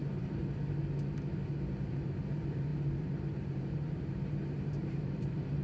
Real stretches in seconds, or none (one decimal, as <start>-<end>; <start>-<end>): 0.4-1.9